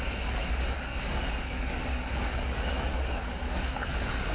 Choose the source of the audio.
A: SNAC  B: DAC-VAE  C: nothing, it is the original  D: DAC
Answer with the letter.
D